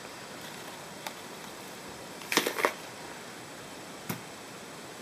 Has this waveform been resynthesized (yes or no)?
yes